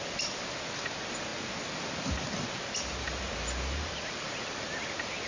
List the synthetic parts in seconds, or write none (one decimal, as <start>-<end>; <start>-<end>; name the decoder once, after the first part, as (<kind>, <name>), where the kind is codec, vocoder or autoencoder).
none